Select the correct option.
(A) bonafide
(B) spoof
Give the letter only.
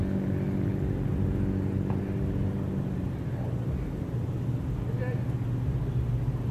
A